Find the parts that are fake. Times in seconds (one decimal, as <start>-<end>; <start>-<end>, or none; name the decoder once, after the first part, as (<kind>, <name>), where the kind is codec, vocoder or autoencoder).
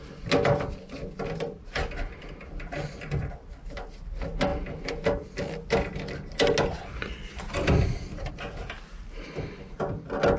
none